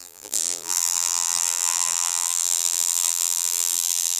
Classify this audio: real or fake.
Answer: fake